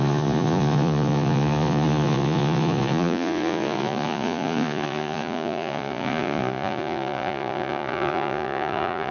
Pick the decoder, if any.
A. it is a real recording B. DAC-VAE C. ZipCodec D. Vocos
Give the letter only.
D